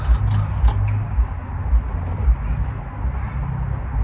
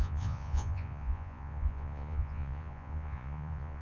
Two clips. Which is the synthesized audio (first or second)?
second